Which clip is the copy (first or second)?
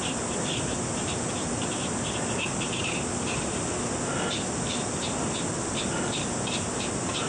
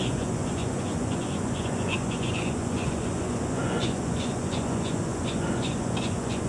second